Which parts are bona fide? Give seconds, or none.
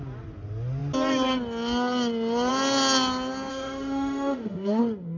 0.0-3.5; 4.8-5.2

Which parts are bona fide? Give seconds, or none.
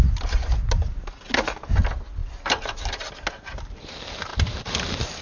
0.0-5.2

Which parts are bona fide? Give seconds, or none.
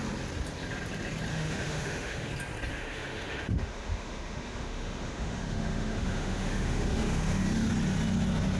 0.0-1.3; 2.3-2.7; 7.7-8.6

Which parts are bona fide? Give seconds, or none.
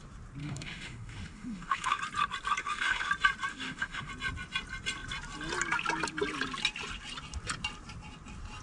0.0-0.4; 2.0-2.6; 3.1-3.5; 4.1-8.6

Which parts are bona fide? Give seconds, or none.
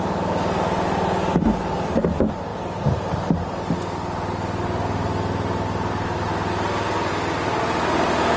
0.0-8.4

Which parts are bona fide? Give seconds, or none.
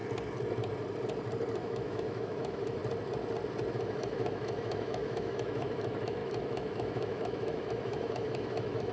0.0-1.6; 2.8-3.7